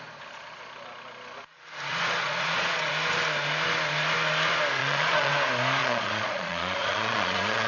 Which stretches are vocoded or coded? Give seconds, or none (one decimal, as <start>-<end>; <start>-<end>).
1.9-2.9; 4.8-5.3; 5.8-7.7